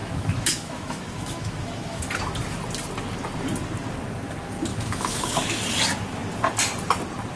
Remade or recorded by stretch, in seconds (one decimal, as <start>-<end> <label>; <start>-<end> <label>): 0.0-2.0 remade; 2.0-4.7 recorded; 4.7-5.6 remade; 5.6-7.4 recorded